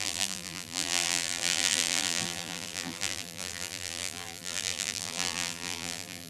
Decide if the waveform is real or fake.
fake